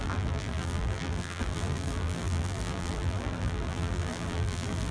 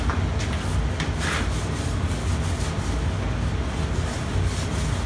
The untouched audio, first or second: second